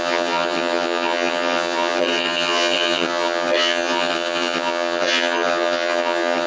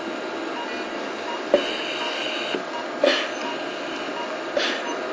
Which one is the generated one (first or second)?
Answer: first